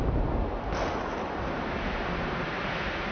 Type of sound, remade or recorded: recorded